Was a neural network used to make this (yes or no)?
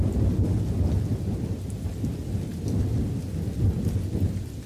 no